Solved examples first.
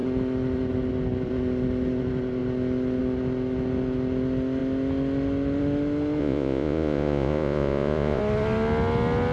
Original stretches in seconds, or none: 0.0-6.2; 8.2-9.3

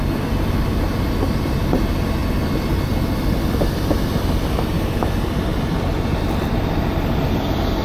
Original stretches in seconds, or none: 0.0-5.5; 6.2-7.8

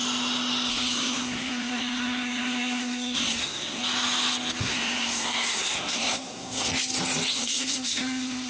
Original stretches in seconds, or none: 0.0-0.7; 3.8-4.6; 6.7-7.3

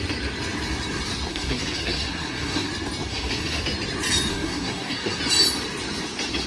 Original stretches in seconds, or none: 0.0-1.3; 2.7-3.1; 3.6-4.3; 5.2-6.5

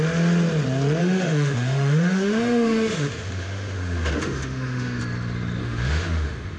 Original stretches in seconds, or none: 0.0-1.0; 5.0-5.6

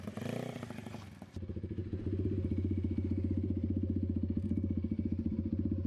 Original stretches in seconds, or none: 0.0-5.9

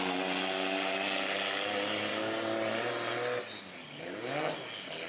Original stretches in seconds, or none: 0.0-5.1

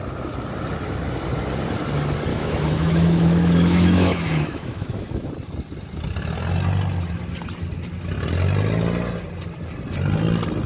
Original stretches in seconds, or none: 0.0-2.3; 5.3-10.7